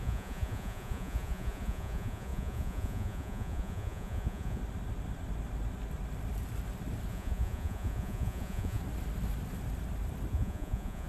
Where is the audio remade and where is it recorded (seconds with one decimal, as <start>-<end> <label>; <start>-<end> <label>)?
0.0-4.6 remade; 4.6-7.1 recorded; 7.1-8.8 remade; 8.8-10.3 recorded; 10.3-11.1 remade